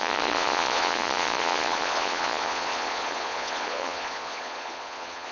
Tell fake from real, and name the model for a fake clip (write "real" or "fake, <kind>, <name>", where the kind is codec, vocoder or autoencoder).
fake, vocoder, Vocos